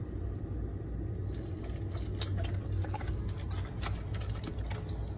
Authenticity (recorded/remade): recorded